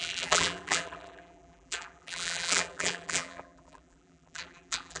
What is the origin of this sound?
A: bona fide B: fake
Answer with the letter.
B